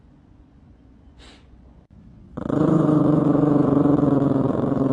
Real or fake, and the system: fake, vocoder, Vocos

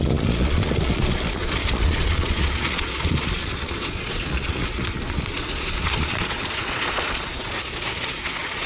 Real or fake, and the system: fake, vocoder, Vocos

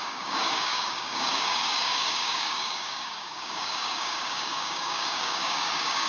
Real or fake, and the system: fake, codec, DAC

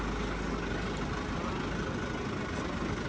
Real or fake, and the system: real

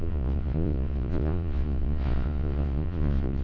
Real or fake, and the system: fake, vocoder, Vocos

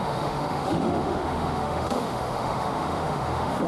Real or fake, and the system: fake, autoencoder, DAC-VAE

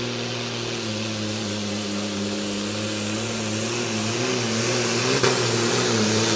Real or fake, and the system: real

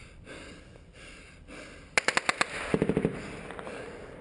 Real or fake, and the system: real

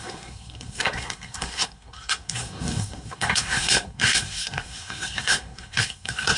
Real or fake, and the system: fake, codec, SNAC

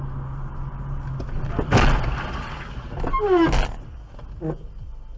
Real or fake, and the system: real